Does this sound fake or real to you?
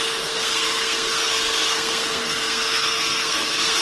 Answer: fake